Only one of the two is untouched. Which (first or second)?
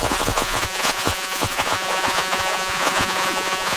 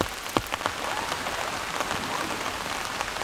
second